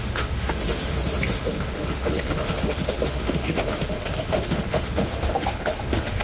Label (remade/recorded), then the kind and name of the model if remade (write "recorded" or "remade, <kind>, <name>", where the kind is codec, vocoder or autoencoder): remade, autoencoder, DAC-VAE